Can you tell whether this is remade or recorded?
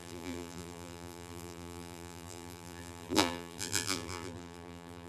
remade